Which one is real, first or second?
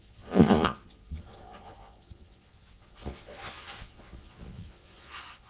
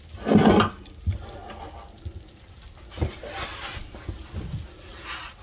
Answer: second